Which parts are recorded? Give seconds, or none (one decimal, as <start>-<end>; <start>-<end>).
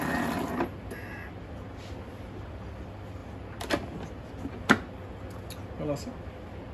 0.0-6.7